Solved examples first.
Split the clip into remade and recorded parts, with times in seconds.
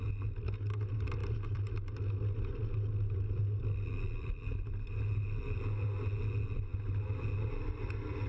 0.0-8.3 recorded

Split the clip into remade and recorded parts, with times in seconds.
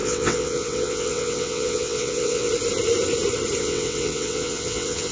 0.0-2.5 remade; 2.5-3.6 recorded; 3.6-5.1 remade